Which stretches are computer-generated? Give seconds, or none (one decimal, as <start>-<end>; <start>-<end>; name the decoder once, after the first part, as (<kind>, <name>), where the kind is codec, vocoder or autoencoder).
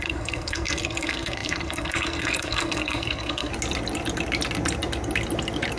0.0-3.5 (codec, SNAC)